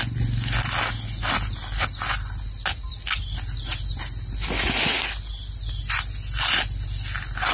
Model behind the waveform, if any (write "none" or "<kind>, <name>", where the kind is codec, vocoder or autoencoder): none